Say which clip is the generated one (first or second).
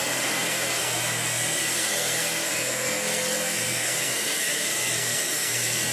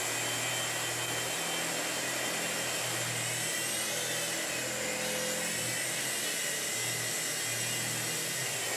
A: first